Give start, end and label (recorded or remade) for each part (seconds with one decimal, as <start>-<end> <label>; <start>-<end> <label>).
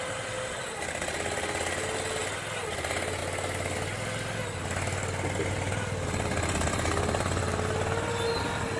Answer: 0.0-8.8 recorded